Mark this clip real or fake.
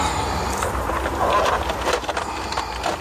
real